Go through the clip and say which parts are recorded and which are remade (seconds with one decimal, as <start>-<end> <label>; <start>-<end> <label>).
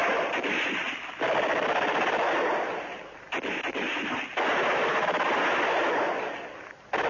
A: 0.0-7.1 recorded